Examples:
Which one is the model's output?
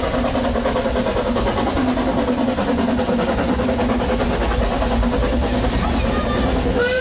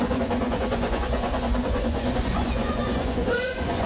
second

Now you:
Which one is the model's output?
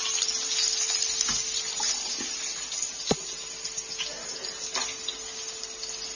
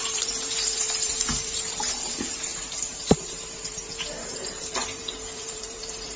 second